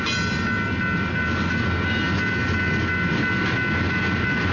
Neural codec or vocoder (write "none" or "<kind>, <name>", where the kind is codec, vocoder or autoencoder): none